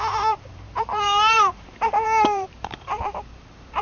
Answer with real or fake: fake